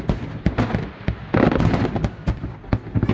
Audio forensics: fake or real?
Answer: real